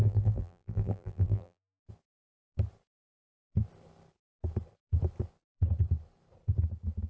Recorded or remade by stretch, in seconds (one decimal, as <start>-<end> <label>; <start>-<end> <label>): 0.0-1.8 remade; 1.8-7.1 recorded

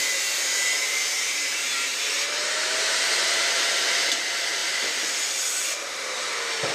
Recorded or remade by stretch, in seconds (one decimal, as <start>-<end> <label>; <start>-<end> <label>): 0.0-3.8 remade; 3.8-6.7 recorded

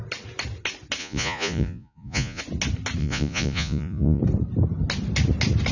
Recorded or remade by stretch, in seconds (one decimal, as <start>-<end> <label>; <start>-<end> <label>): 0.0-1.0 recorded; 1.0-2.4 remade; 2.4-3.0 recorded; 3.0-4.2 remade; 4.2-5.7 recorded